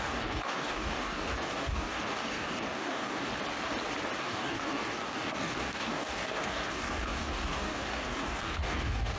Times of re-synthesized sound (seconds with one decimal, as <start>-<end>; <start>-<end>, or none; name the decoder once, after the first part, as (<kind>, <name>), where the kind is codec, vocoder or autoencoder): 0.0-3.3 (codec, DAC); 4.2-9.2